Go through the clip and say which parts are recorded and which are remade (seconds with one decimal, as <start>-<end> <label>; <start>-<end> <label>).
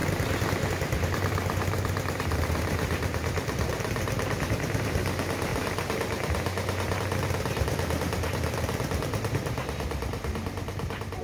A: 0.0-11.2 remade